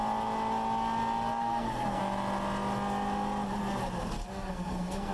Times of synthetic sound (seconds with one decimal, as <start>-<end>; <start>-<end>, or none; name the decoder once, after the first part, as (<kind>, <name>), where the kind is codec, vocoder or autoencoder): 1.4-2.0 (codec, SNAC); 4.3-5.1